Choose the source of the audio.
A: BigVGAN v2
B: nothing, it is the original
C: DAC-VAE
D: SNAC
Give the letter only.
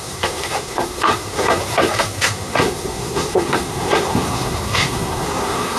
D